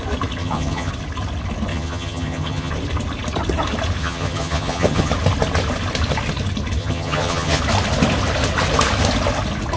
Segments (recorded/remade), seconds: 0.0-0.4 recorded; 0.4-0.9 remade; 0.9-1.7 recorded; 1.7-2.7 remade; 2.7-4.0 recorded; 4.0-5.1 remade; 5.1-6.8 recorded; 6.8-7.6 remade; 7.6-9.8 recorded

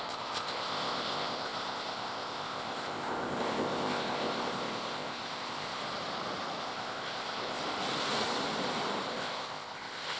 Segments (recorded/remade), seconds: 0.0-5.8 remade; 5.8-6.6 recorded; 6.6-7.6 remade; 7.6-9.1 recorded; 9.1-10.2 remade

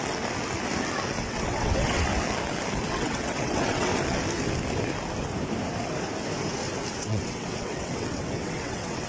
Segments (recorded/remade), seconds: 0.0-1.2 recorded; 1.2-2.1 remade; 2.1-2.8 recorded; 2.8-3.9 remade; 3.9-7.0 recorded; 7.0-9.1 remade

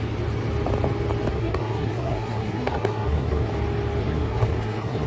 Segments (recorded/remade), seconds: 0.0-1.3 recorded; 1.3-3.5 remade; 3.5-4.0 recorded; 4.0-5.1 remade